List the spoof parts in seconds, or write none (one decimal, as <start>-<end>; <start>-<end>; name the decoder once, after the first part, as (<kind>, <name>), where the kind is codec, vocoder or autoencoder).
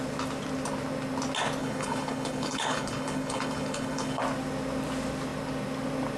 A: 1.6-4.2 (codec, HILCodec)